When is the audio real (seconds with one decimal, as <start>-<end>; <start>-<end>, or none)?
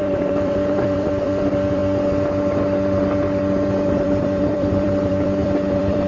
1.8-3.9